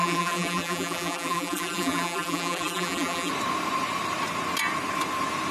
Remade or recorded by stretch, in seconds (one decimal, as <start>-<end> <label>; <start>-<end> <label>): 0.0-3.3 remade; 3.3-5.5 recorded